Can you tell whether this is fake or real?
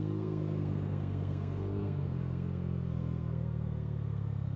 fake